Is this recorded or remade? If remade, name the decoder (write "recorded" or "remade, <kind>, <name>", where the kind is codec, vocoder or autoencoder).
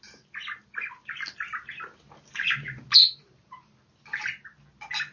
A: recorded